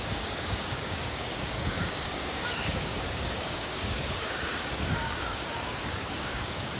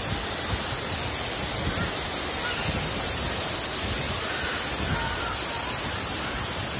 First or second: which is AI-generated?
first